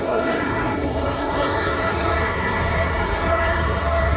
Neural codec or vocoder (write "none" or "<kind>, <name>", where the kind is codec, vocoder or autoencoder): codec, SNAC